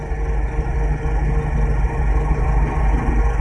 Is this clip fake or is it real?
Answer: real